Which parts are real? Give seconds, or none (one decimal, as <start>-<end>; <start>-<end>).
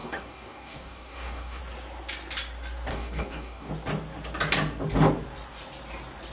1.6-2.9; 3.7-6.3